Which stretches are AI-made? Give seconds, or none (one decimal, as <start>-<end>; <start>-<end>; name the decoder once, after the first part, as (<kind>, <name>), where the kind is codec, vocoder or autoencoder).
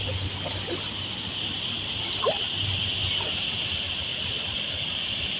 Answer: 4.1-4.8 (vocoder, Vocos)